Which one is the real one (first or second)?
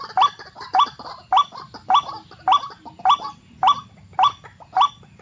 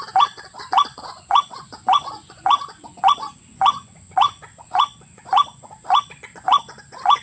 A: first